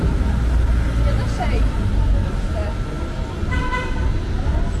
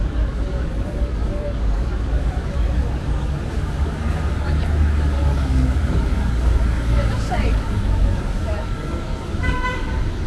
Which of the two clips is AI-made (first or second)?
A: second